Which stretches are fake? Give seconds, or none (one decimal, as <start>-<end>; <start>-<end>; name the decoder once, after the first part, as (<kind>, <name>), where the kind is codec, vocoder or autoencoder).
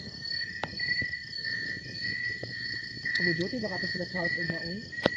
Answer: 1.4-4.5 (vocoder, WaveNeXt)